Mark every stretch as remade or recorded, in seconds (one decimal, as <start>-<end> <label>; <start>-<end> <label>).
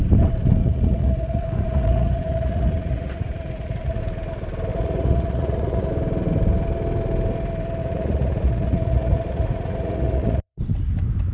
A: 0.0-0.6 recorded; 0.6-4.0 remade; 4.0-4.7 recorded; 4.7-5.9 remade; 5.9-7.8 recorded; 7.8-10.6 remade; 10.6-11.3 recorded